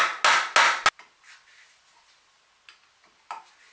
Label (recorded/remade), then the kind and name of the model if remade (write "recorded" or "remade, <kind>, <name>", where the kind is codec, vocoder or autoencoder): recorded